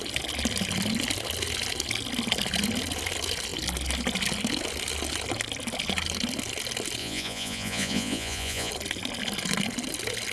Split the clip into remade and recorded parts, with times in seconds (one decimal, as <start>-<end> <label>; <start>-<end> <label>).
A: 0.0-7.0 recorded; 7.0-8.7 remade; 8.7-10.3 recorded